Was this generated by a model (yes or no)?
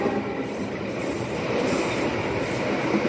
no